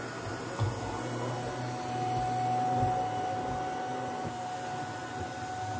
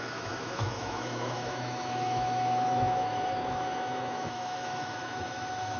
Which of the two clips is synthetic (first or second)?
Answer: second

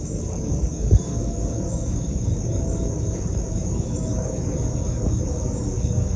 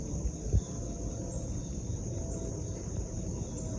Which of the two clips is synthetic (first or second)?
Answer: first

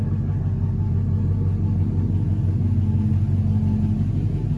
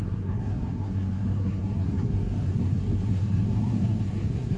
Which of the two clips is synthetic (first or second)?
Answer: second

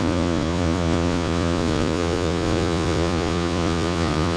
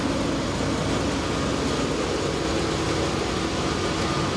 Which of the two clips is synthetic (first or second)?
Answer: first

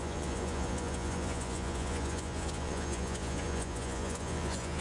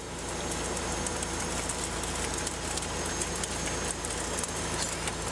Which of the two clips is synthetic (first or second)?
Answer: first